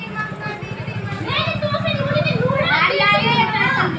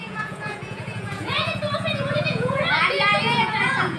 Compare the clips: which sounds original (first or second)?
first